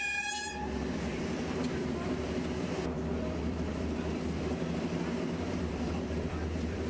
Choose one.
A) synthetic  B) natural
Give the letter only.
A